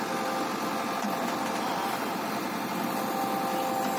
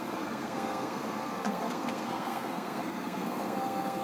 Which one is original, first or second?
first